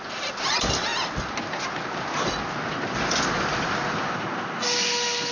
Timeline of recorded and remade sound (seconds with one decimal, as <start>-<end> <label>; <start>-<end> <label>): 0.0-5.3 recorded